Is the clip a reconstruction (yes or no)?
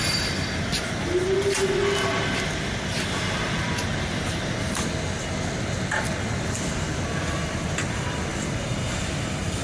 no